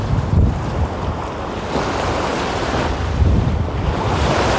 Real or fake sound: fake